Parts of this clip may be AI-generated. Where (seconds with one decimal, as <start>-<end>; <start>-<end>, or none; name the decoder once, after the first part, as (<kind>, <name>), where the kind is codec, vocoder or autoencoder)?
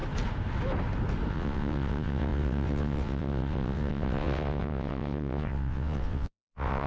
1.3-6.9 (vocoder, WaveNeXt)